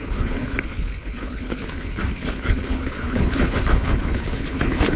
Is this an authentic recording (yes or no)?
no